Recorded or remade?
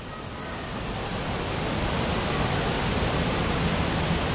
recorded